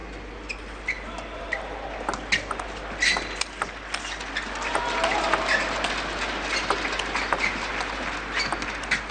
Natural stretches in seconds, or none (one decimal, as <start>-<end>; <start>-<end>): 0.0-9.1

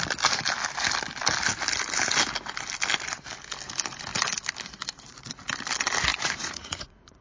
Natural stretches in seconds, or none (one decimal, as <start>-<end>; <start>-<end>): 0.0-6.1

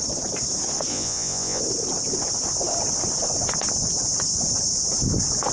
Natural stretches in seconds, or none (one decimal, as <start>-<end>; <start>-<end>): 0.0-0.9; 1.6-5.5

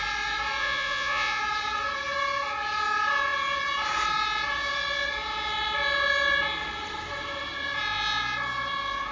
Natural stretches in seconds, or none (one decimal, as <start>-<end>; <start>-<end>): 0.0-0.6; 1.4-9.1

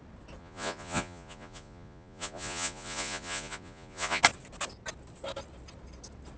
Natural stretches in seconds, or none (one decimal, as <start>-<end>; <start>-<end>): 0.0-0.4; 4.2-6.4

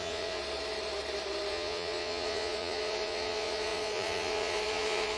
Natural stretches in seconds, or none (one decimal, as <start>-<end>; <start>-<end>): 0.4-1.5

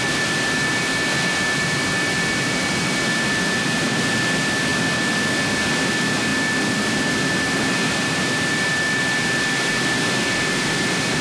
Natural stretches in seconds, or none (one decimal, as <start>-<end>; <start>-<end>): 0.0-11.2